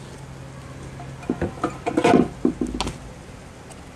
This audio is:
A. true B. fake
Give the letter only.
A